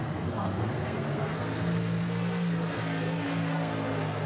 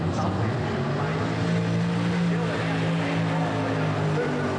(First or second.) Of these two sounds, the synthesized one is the first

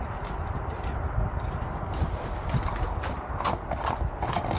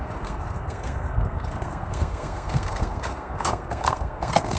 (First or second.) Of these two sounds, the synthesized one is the second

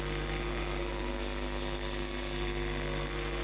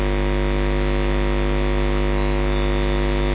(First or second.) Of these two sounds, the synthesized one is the first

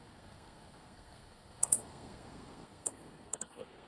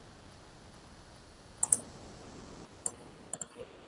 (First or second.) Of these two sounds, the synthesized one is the first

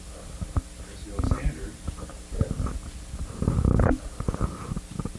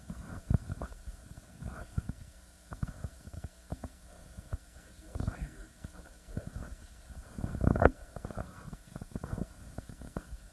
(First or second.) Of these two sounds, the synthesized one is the second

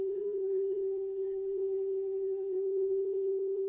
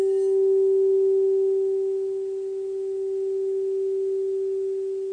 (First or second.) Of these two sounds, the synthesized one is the first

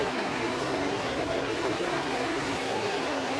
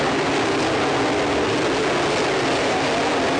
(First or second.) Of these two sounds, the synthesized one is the first